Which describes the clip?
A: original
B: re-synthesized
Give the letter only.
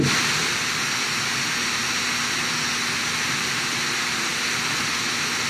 A